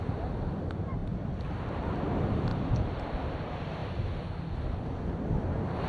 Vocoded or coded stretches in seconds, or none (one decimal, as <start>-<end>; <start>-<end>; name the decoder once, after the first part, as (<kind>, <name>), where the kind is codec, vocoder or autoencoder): 0.0-3.8 (vocoder, BigVGAN v2); 5.3-5.9